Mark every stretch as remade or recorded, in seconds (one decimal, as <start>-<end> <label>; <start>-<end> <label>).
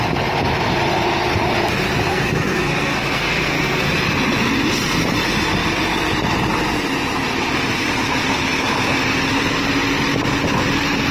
0.0-2.1 recorded; 2.1-3.9 remade; 3.9-11.1 recorded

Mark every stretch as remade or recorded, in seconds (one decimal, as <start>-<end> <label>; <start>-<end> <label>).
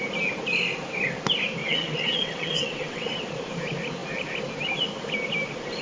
0.0-1.6 recorded; 1.6-3.2 remade; 3.2-5.8 recorded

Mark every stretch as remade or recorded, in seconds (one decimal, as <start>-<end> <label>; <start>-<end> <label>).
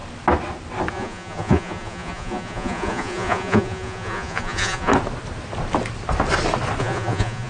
0.0-0.9 recorded; 0.9-4.9 remade; 4.9-6.8 recorded; 6.8-7.5 remade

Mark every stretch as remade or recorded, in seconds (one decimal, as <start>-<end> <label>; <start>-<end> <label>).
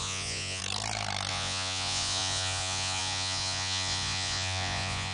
0.0-0.6 remade; 0.6-1.3 recorded; 1.3-5.1 remade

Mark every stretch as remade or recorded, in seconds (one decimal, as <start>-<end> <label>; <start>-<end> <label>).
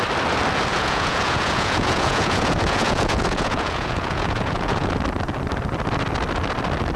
0.0-0.7 recorded; 0.7-4.9 remade; 4.9-7.0 recorded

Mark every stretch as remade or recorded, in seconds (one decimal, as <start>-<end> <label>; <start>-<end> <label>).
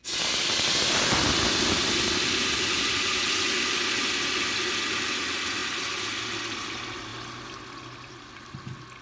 0.0-9.0 recorded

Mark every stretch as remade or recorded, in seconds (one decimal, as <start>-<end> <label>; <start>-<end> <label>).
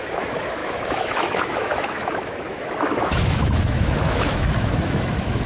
0.0-5.5 remade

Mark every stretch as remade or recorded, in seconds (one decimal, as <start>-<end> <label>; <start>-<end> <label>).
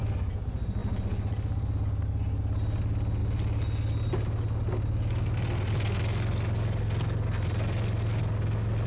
0.0-8.9 recorded